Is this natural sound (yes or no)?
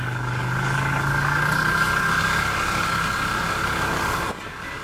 no